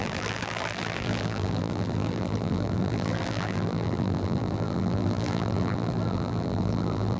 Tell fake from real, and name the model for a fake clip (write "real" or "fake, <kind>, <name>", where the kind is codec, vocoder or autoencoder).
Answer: fake, vocoder, BigVGAN v2